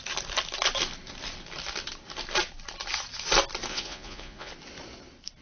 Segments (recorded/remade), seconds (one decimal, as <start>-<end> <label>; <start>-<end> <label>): 0.0-3.7 recorded; 3.7-4.5 remade; 4.5-5.4 recorded